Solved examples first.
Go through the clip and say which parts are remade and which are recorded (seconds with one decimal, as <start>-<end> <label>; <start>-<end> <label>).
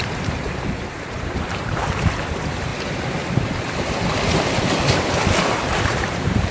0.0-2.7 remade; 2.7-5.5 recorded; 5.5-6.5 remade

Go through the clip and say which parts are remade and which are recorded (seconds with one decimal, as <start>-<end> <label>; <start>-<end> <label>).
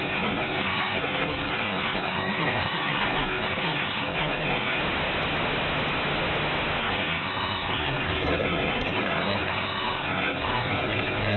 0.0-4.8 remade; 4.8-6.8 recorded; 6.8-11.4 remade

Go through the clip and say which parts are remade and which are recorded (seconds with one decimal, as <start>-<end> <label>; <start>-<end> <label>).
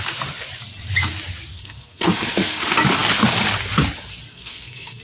0.0-1.5 recorded; 1.5-2.6 remade; 2.6-4.3 recorded; 4.3-5.0 remade